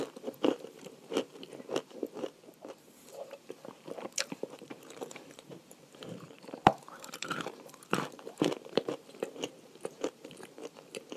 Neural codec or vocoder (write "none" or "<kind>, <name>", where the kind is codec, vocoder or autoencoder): vocoder, BigVGAN v2